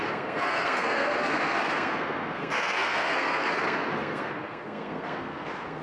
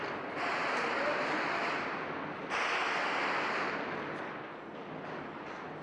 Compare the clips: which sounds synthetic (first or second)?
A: first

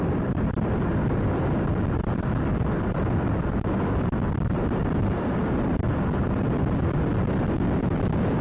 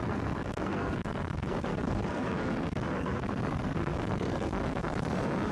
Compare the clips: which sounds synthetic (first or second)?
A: second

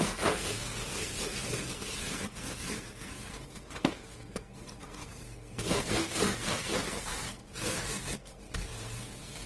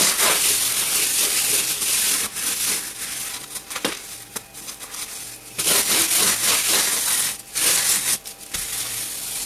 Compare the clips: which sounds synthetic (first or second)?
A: first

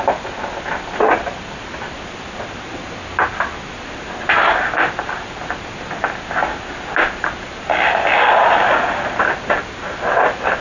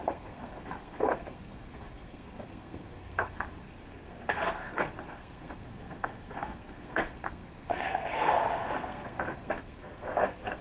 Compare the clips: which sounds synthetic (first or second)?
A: second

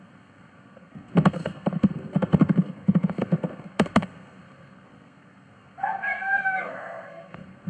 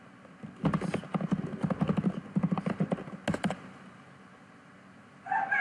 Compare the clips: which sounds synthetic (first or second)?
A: first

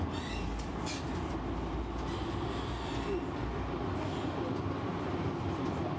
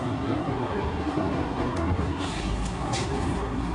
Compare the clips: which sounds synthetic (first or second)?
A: second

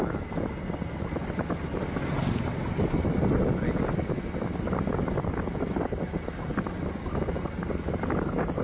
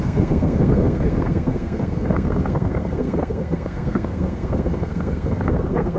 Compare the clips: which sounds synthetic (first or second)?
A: second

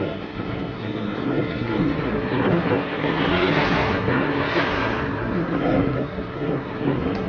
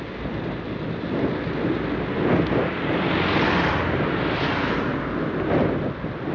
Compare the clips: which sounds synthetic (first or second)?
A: first